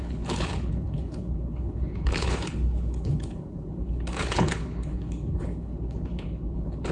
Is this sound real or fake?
fake